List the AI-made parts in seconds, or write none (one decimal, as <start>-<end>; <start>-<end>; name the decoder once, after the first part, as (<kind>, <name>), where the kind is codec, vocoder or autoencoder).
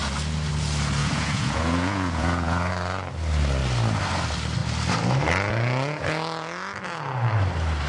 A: 1.0-2.7 (vocoder, Vocos)